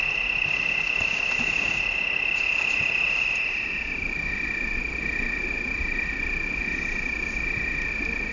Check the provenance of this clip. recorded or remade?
recorded